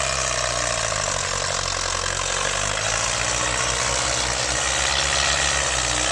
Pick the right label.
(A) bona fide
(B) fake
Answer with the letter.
A